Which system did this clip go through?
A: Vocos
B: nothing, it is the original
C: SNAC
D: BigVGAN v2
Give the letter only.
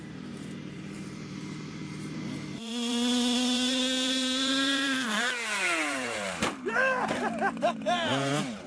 D